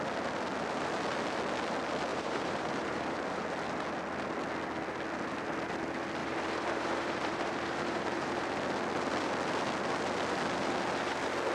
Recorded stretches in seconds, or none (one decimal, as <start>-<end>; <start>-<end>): 0.0-2.1; 3.4-6.2; 8.5-11.5